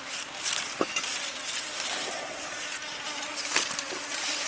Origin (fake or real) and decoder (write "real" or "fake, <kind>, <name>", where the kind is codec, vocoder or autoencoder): real